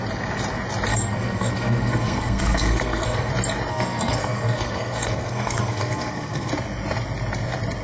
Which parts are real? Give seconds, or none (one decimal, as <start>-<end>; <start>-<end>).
0.0-0.9; 3.3-3.7; 6.5-7.8